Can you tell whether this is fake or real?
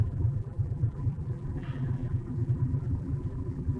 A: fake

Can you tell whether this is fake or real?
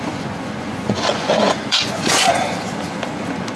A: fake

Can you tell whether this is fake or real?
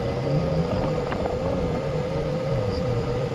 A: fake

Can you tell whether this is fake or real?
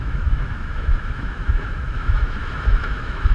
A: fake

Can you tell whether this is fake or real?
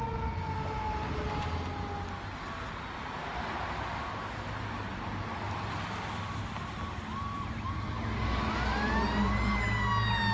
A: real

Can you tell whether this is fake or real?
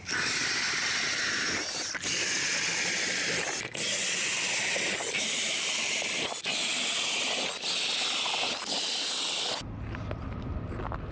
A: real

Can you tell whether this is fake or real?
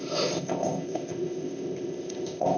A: fake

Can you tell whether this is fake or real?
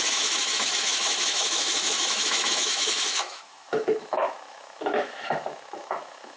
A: fake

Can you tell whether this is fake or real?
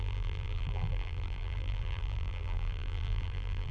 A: fake